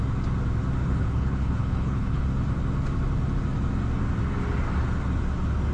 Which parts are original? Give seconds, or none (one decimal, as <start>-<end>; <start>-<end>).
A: 0.0-0.8; 2.2-5.7